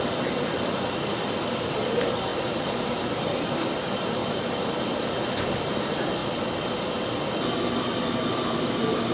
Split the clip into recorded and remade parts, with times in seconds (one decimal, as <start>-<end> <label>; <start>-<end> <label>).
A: 0.0-6.2 remade; 6.2-8.6 recorded; 8.6-9.1 remade

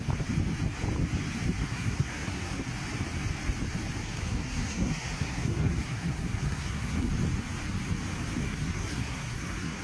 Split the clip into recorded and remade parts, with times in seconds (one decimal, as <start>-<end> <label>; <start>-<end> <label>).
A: 0.0-1.6 recorded; 1.6-2.6 remade; 2.6-4.0 recorded; 4.0-7.1 remade; 7.1-8.4 recorded; 8.4-9.8 remade

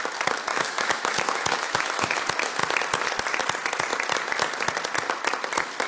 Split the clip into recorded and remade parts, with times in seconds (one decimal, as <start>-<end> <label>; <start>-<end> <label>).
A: 0.0-0.5 recorded; 0.5-2.2 remade; 2.2-5.9 recorded

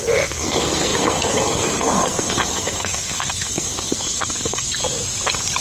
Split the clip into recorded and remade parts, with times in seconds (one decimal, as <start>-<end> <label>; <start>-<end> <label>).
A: 0.0-4.8 remade; 4.8-5.6 recorded

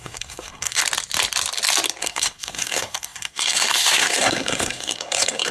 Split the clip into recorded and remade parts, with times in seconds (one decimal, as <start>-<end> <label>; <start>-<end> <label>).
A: 0.0-0.8 remade; 0.8-2.0 recorded; 2.0-5.5 remade

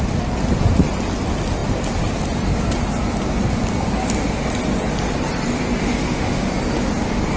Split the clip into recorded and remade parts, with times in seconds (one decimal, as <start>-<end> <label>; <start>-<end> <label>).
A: 0.0-5.8 recorded; 5.8-6.5 remade; 6.5-7.4 recorded

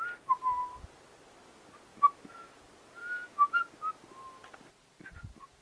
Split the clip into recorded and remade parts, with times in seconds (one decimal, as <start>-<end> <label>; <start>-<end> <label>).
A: 0.0-1.9 recorded; 1.9-2.5 remade; 2.5-3.0 recorded; 3.0-3.9 remade; 3.9-5.6 recorded

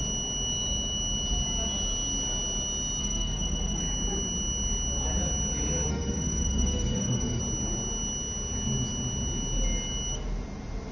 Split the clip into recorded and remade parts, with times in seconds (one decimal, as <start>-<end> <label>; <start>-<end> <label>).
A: 0.0-3.0 recorded; 3.0-3.8 remade; 3.8-5.9 recorded; 5.9-7.4 remade; 7.4-10.9 recorded